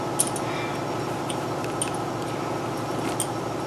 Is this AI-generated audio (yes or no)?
no